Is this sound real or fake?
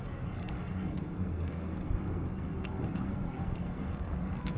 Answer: fake